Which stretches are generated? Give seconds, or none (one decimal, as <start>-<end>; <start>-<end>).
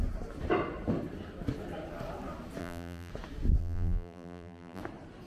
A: 2.6-3.1; 3.6-4.8